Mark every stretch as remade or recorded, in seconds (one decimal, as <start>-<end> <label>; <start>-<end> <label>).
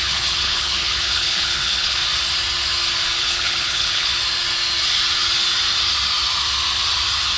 0.0-2.0 remade; 2.0-3.2 recorded; 3.2-4.1 remade; 4.1-7.4 recorded